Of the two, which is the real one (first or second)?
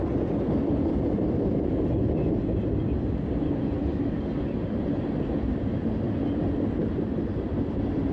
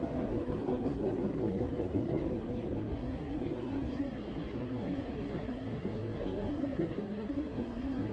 first